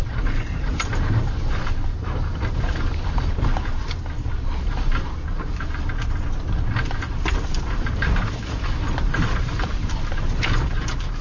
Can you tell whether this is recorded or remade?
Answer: remade